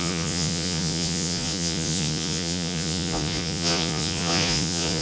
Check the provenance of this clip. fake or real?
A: fake